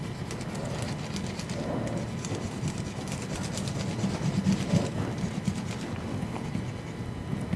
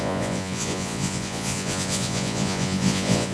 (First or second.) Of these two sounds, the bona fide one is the first